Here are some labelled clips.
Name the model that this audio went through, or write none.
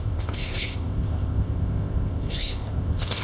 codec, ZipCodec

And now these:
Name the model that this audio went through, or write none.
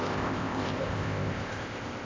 codec, ZipCodec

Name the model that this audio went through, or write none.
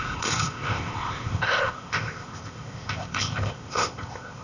codec, ZipCodec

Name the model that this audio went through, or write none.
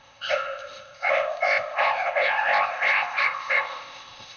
codec, ZipCodec